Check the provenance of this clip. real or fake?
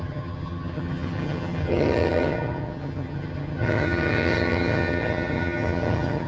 fake